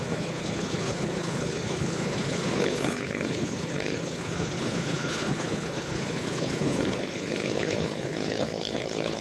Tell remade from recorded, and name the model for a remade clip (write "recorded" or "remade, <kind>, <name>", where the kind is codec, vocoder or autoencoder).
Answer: remade, codec, HILCodec